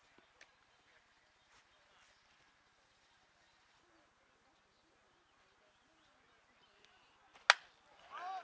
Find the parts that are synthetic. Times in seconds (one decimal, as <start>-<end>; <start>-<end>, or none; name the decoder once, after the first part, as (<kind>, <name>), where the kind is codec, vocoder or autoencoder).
none